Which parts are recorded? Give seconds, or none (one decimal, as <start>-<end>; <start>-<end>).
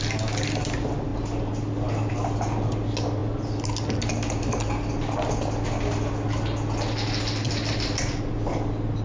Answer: 0.0-9.0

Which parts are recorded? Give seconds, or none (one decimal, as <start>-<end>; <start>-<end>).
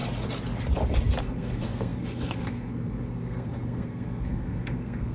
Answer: 0.0-1.2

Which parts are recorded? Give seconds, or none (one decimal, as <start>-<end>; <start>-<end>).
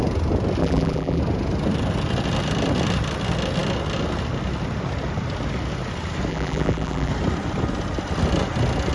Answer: 0.0-0.6; 1.2-6.3; 7.1-8.9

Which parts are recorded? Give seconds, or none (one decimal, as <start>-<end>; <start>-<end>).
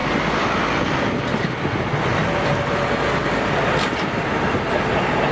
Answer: 0.0-5.3